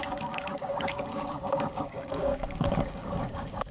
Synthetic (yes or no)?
yes